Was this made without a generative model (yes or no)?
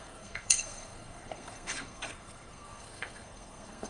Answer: no